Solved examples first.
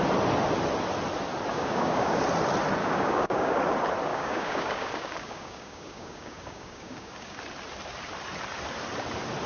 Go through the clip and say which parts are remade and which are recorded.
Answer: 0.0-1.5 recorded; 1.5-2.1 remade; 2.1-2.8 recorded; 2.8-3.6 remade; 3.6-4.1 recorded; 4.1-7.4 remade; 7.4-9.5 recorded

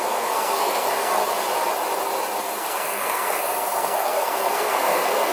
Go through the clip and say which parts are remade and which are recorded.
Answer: 0.0-1.2 remade; 1.2-2.4 recorded; 2.4-5.3 remade

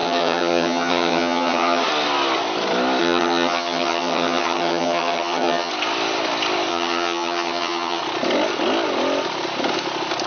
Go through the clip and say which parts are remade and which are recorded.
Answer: 0.0-1.8 remade; 1.8-3.0 recorded; 3.0-5.7 remade; 5.7-6.7 recorded; 6.7-8.0 remade; 8.0-10.3 recorded

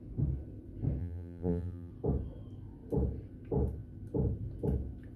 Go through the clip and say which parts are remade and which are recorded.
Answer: 0.0-1.0 recorded; 1.0-1.9 remade; 1.9-5.2 recorded

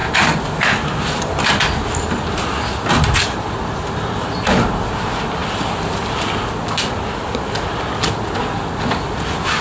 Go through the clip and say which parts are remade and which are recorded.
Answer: 0.0-9.6 recorded